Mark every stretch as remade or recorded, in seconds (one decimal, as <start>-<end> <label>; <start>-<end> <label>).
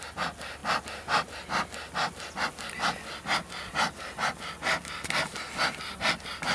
0.0-6.5 recorded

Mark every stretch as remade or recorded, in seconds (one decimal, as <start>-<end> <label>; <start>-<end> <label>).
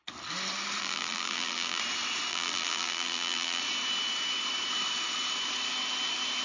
0.0-0.8 recorded; 0.8-1.8 remade; 1.8-2.3 recorded; 2.3-3.6 remade; 3.6-6.4 recorded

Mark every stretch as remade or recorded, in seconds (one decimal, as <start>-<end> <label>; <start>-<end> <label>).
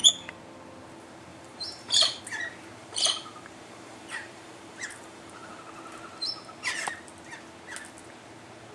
0.0-1.3 recorded; 1.3-2.2 remade; 2.2-2.8 recorded; 2.8-5.6 remade; 5.6-8.7 recorded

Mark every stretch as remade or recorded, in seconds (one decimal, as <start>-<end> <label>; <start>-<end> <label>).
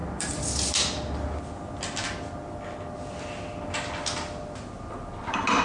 0.0-5.6 recorded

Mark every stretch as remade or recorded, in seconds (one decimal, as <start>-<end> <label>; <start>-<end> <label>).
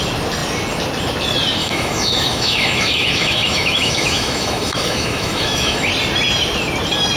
0.0-1.6 recorded; 1.6-5.9 remade; 5.9-7.2 recorded